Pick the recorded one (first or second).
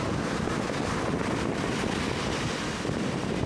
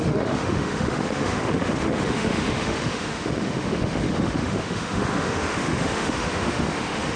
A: first